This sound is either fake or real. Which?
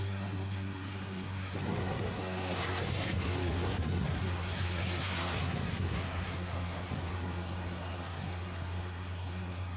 fake